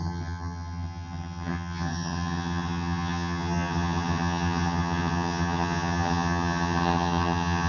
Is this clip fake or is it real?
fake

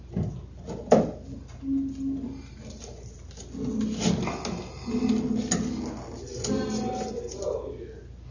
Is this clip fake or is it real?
real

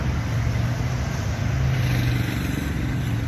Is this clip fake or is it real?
real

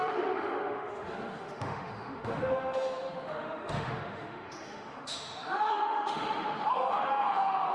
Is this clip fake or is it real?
fake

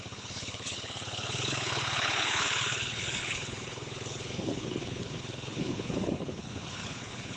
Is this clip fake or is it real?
fake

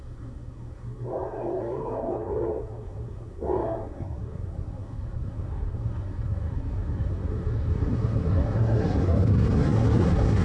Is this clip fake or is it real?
fake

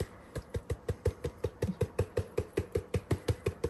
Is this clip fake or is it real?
fake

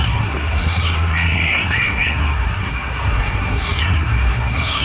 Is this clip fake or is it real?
fake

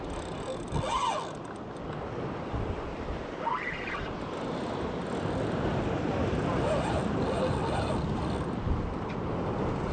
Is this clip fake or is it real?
real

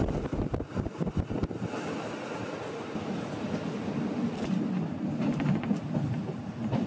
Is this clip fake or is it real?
real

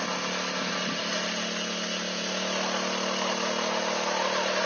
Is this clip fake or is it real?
real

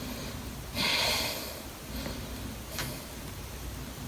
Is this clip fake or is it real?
real